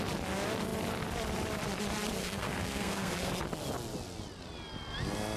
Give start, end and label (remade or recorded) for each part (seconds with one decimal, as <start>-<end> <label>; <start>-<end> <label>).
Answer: 0.0-2.2 recorded; 2.2-3.3 remade; 3.3-5.4 recorded